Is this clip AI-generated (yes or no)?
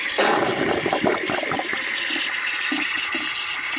yes